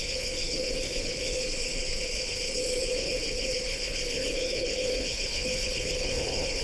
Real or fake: fake